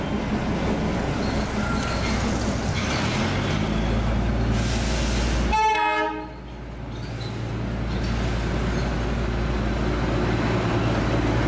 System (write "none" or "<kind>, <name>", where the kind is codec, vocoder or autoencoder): none